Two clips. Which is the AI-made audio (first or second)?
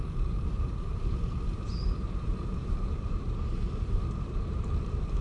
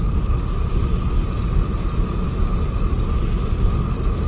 first